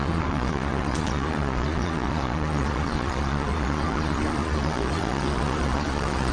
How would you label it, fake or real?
fake